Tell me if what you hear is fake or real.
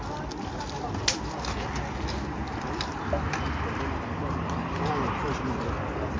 real